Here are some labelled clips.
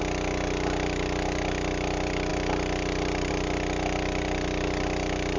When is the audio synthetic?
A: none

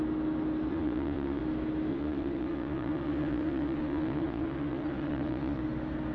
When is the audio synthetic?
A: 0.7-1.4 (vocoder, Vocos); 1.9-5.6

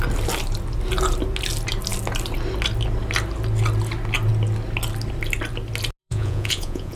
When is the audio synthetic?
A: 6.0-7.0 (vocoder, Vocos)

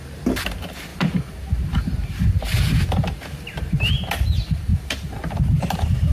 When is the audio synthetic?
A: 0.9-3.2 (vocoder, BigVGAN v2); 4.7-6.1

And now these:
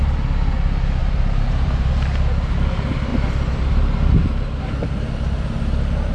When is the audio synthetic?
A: 1.0-1.9 (vocoder, BigVGAN v2)

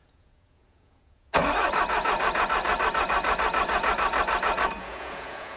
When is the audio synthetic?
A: 0.0-1.4 (vocoder, Vocos); 4.8-5.6